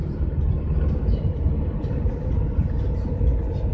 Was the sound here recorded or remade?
recorded